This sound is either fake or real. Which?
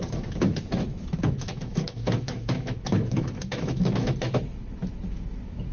fake